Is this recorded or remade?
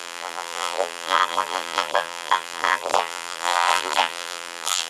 remade